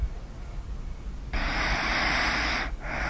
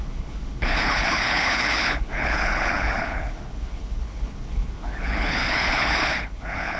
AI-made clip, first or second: second